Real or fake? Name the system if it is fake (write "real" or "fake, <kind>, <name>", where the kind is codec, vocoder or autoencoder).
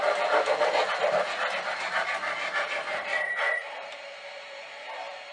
fake, vocoder, BigVGAN v2